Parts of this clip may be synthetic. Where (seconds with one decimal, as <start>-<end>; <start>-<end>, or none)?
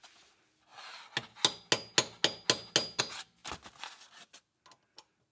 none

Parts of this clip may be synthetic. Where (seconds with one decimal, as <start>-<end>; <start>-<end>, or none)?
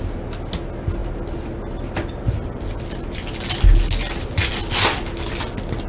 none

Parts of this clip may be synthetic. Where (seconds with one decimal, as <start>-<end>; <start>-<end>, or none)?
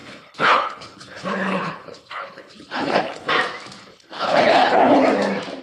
0.0-3.3; 3.8-5.0